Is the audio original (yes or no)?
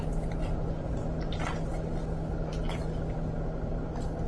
yes